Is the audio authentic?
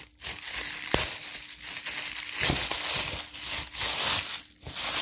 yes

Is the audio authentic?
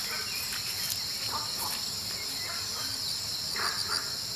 yes